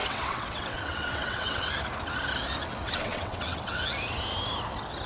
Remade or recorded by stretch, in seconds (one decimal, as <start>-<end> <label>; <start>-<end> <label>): 0.0-1.7 remade; 1.7-2.8 recorded; 2.8-3.8 remade; 3.8-5.1 recorded